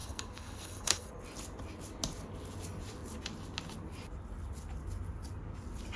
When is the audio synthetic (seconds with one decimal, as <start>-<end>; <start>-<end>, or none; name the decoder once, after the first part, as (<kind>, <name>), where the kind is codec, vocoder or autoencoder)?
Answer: 0.0-1.1 (codec, SNAC)